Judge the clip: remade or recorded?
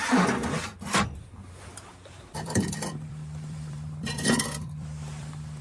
remade